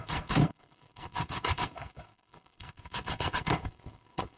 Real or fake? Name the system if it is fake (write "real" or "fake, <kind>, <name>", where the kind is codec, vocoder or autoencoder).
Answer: fake, codec, SNAC